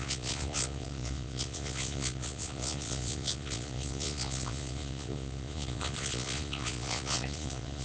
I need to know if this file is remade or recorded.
remade